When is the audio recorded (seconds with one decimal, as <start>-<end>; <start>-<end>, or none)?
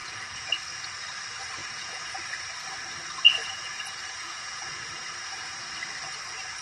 0.5-1.6; 2.2-3.4; 5.7-6.6